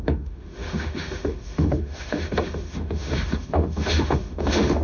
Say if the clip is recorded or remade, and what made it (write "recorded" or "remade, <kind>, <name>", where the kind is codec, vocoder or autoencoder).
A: remade, autoencoder, DAC-VAE